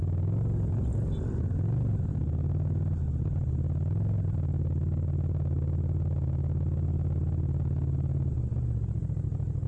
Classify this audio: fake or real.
real